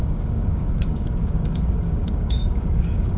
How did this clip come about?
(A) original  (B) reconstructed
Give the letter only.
B